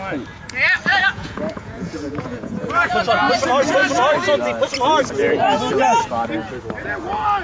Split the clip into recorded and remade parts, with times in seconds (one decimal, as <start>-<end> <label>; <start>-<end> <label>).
0.0-0.9 recorded; 0.9-3.3 remade; 3.3-5.2 recorded; 5.2-6.0 remade; 6.0-7.4 recorded